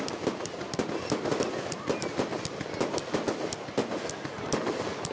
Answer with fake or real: real